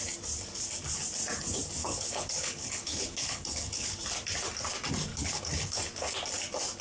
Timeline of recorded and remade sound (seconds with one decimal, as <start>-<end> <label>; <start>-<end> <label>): 0.0-1.8 recorded; 1.8-4.0 remade; 4.0-5.1 recorded; 5.1-5.8 remade; 5.8-6.8 recorded